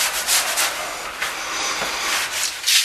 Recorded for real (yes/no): yes